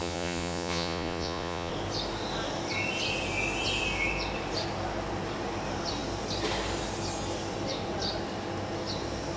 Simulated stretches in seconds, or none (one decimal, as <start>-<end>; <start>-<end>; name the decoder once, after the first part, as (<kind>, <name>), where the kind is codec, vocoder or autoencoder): 0.0-1.7 (vocoder, Vocos)

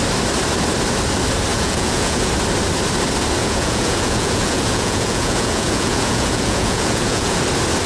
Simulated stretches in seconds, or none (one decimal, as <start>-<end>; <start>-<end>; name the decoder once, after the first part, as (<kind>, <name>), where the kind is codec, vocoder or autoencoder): 1.5-2.3 (vocoder, Vocos); 3.4-7.4

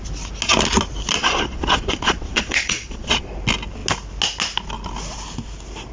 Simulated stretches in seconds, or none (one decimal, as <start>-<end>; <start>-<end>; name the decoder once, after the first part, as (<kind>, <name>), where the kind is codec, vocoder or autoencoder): 1.2-3.3 (vocoder, Vocos)

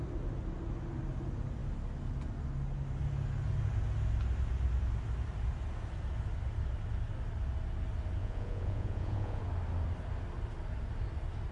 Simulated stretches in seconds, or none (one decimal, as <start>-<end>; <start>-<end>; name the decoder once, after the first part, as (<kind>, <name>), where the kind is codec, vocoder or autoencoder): 8.2-9.4 (vocoder, Vocos)

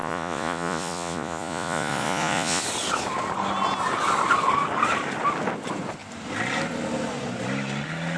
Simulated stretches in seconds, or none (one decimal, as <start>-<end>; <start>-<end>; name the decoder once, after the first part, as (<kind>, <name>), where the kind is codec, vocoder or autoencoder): 0.0-2.6 (vocoder, Vocos)